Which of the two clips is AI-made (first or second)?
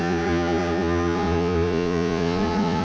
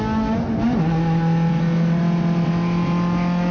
first